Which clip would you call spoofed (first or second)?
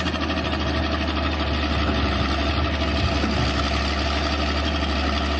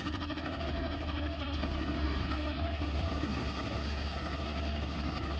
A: second